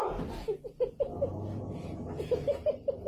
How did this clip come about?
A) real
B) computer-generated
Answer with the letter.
A